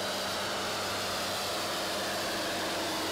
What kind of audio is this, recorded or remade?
remade